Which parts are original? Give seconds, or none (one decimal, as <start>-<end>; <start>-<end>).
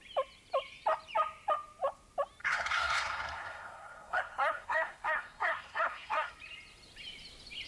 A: 0.0-2.4; 6.3-7.7